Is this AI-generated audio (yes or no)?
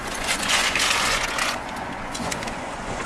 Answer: yes